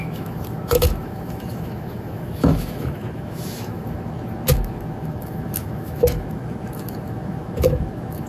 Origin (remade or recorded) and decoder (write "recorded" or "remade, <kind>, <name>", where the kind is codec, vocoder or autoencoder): remade, autoencoder, DAC-VAE